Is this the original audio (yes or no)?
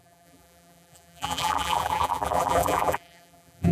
no